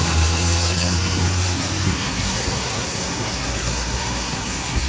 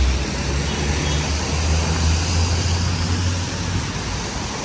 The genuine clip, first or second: second